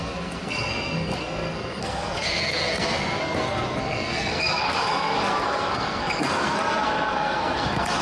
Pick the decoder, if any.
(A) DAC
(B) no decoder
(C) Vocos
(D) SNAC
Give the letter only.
D